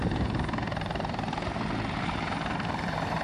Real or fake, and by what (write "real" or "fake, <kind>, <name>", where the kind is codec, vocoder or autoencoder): fake, vocoder, BigVGAN v2